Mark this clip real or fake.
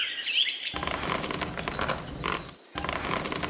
real